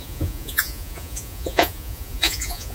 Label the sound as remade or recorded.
remade